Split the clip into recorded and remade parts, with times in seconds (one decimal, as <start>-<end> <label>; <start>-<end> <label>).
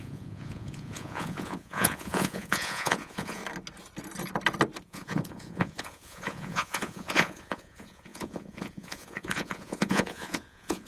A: 0.0-3.4 remade; 3.4-4.8 recorded; 4.8-10.9 remade